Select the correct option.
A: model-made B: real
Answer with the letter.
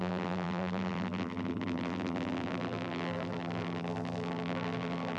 A